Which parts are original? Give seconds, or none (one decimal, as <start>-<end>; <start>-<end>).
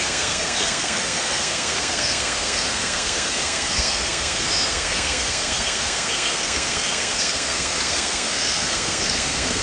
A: none